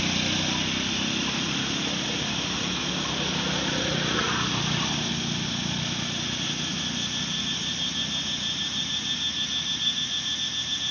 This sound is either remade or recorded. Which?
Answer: recorded